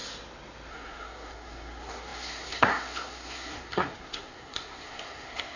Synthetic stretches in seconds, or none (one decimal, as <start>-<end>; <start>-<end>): 0.7-5.6